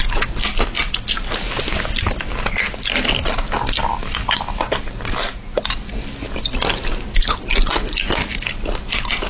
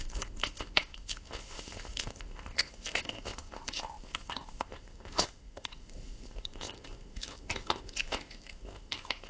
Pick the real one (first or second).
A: first